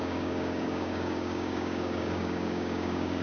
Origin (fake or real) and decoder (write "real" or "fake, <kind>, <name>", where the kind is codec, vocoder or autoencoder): fake, codec, DAC